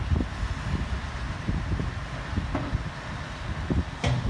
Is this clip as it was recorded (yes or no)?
yes